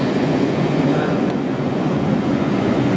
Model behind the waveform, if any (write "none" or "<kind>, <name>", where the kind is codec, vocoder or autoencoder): vocoder, Vocos